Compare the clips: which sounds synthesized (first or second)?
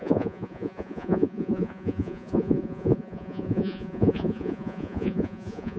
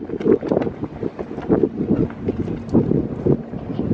first